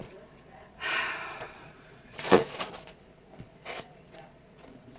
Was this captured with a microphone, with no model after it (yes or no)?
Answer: no